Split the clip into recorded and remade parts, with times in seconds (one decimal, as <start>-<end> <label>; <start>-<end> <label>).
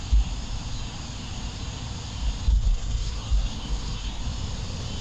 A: 0.0-2.5 recorded; 2.5-4.2 remade; 4.2-5.0 recorded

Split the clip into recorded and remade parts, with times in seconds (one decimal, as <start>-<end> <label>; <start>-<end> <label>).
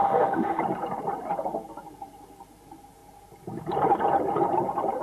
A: 0.0-0.6 remade; 0.6-5.0 recorded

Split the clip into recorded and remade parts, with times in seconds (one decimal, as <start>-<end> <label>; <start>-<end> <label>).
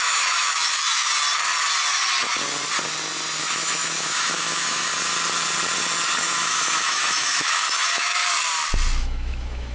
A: 0.0-1.1 remade; 1.1-3.4 recorded; 3.4-4.9 remade; 4.9-6.2 recorded; 6.2-8.2 remade; 8.2-9.0 recorded; 9.0-9.7 remade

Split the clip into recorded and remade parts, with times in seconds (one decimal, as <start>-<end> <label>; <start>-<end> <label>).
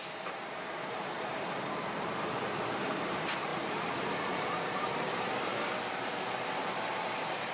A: 0.0-5.5 remade; 5.5-7.5 recorded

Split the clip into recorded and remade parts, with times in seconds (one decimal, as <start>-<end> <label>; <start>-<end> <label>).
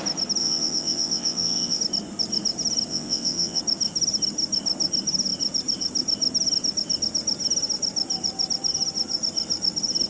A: 0.0-0.4 recorded; 0.4-1.8 remade; 1.8-2.9 recorded; 2.9-3.6 remade; 3.6-10.1 recorded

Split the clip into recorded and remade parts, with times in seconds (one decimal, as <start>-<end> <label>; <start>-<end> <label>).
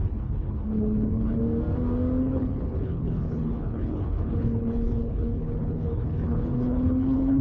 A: 0.0-1.4 remade; 1.4-2.2 recorded; 2.2-7.4 remade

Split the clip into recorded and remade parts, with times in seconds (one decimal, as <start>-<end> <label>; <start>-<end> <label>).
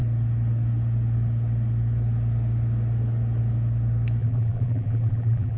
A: 0.0-4.2 recorded; 4.2-5.6 remade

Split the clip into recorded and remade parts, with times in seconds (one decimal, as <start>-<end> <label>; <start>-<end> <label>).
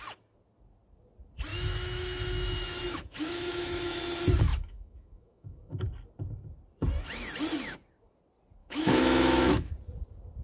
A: 0.0-1.5 recorded; 1.5-4.0 remade; 4.0-4.5 recorded; 4.5-5.7 remade; 5.7-8.6 recorded; 8.6-9.7 remade; 9.7-10.4 recorded